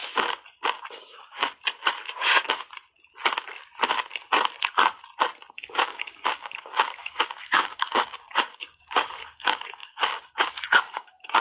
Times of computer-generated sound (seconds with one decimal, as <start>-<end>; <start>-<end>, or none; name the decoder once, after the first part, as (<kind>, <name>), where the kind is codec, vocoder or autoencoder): 0.9-1.4 (codec, DAC); 5.5-11.4